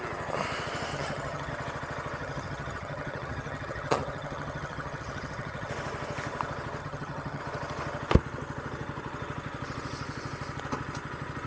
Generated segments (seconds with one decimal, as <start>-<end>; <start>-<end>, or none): 0.9-1.5; 2.2-5.7; 6.8-7.4